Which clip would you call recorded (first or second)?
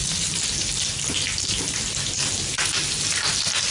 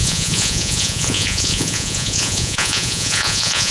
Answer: first